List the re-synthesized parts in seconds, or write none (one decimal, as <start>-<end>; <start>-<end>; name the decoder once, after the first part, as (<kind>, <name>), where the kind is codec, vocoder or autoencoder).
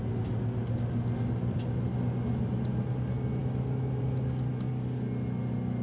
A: none